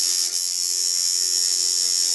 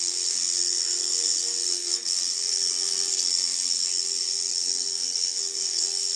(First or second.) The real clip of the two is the first